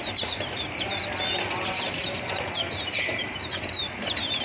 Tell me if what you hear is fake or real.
fake